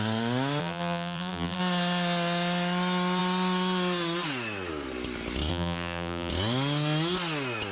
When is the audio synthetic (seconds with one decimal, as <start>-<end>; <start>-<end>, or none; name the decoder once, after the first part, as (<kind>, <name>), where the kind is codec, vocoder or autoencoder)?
0.6-1.6 (vocoder, BigVGAN v2); 5.5-6.3